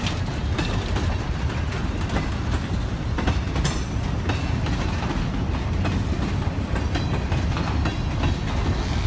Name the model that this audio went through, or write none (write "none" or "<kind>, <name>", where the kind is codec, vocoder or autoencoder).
none